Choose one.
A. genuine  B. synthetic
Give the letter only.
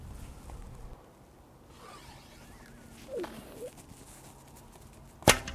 A